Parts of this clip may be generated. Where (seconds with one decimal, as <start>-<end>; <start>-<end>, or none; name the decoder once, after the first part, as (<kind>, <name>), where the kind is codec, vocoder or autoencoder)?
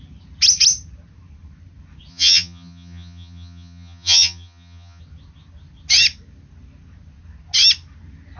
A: 2.1-5.0 (vocoder, HiFi-GAN)